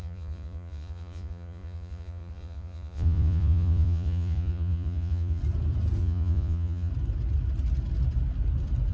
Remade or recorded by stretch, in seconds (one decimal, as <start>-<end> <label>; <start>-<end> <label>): 0.0-5.4 remade; 5.4-6.0 recorded; 6.0-6.9 remade; 6.9-8.9 recorded